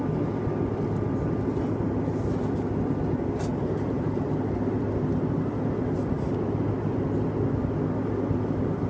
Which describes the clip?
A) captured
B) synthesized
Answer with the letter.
A